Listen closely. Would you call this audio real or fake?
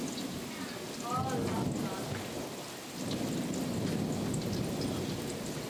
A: real